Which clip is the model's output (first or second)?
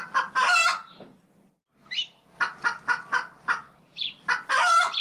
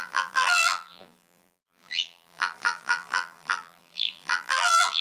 second